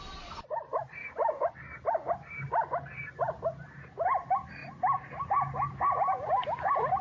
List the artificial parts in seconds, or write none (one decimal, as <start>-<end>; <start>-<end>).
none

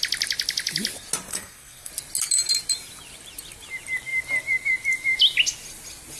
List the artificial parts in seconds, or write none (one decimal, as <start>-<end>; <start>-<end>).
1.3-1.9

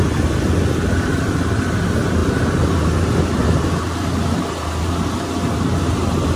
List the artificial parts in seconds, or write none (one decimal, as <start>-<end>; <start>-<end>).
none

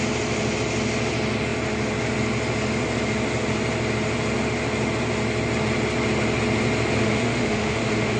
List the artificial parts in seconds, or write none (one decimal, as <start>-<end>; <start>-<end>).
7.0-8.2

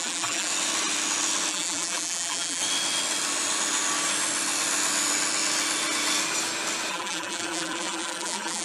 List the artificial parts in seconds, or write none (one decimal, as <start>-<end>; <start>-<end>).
0.0-0.5; 1.5-2.6; 6.9-8.6